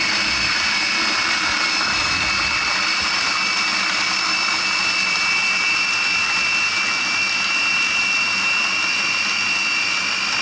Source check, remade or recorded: recorded